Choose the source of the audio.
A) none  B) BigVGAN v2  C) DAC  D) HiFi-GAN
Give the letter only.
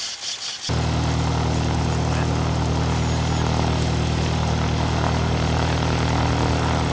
A